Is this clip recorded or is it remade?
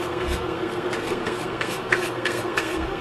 remade